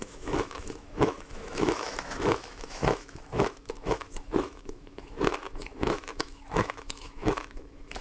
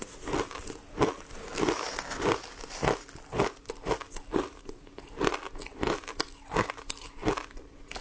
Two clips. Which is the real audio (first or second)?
second